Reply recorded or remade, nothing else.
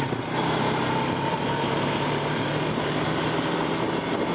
remade